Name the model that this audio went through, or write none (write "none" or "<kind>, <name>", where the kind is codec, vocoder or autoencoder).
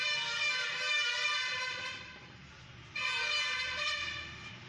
none